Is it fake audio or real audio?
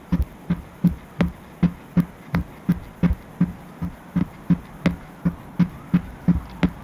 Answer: real